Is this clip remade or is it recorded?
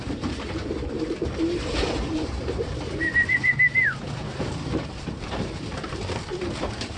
remade